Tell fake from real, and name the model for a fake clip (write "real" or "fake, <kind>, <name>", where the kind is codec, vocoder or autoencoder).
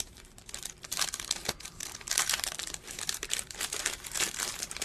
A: fake, vocoder, BigVGAN v2